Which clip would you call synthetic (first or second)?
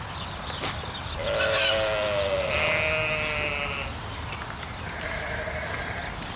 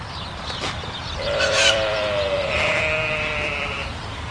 second